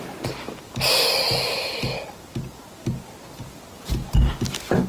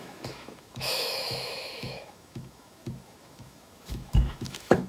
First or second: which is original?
first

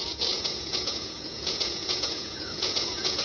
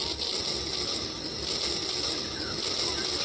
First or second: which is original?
second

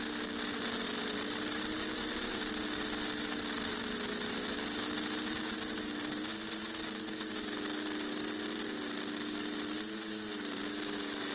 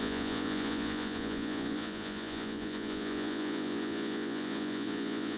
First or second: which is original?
first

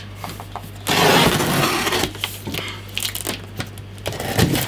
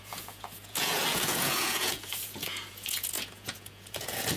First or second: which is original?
first